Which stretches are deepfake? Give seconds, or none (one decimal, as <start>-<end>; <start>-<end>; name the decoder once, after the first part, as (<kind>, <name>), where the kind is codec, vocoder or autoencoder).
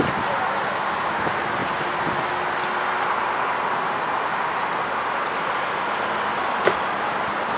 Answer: none